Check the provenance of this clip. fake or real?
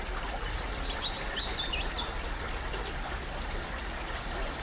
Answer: real